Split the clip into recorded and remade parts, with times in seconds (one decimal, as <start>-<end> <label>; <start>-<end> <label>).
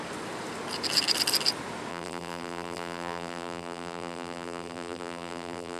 0.0-1.9 recorded; 1.9-5.8 remade